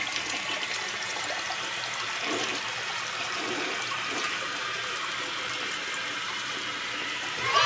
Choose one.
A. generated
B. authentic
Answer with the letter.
A